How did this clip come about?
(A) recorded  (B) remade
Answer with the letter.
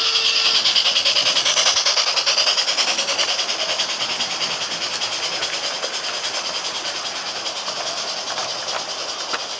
A